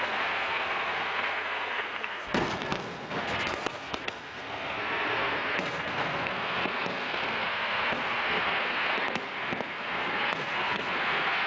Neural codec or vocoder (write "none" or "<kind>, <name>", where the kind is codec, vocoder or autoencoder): codec, SNAC